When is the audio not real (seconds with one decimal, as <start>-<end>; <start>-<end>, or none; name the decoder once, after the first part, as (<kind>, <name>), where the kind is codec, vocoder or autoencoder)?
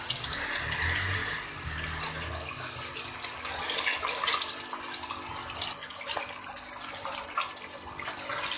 none